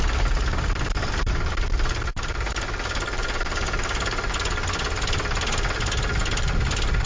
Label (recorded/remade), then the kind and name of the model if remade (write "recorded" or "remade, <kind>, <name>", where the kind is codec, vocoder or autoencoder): recorded